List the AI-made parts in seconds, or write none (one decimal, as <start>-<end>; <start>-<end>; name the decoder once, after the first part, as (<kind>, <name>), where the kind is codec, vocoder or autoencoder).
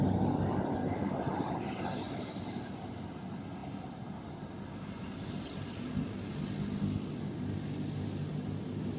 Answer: none